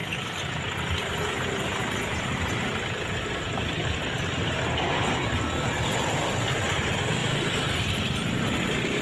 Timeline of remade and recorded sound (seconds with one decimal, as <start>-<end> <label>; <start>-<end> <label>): 0.0-3.3 recorded; 3.3-3.8 remade; 3.8-6.7 recorded; 6.7-9.0 remade